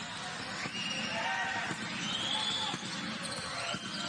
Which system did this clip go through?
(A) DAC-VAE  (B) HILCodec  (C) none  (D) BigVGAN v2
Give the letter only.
C